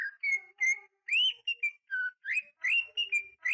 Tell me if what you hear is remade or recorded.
recorded